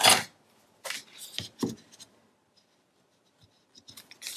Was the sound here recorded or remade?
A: recorded